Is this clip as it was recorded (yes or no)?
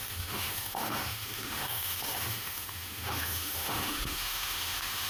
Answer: no